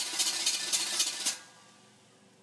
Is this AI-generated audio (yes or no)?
no